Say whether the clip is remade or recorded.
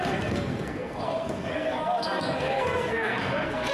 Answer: remade